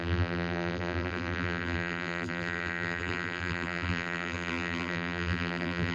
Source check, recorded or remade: remade